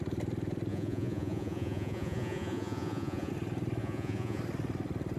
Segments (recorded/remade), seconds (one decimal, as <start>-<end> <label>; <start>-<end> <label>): 0.0-0.7 recorded; 0.7-3.3 remade; 3.3-3.8 recorded; 3.8-4.4 remade; 4.4-5.2 recorded